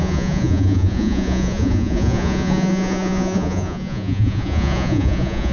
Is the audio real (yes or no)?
no